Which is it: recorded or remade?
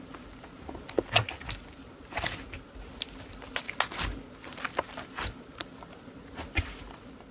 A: recorded